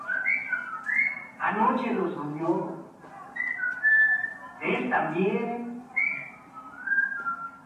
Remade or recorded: recorded